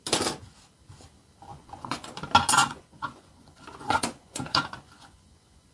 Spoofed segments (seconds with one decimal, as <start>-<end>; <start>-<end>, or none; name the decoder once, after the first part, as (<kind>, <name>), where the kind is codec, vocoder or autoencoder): 1.5-2.1 (vocoder, Vocos); 2.6-5.7